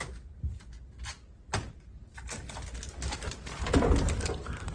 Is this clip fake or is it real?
real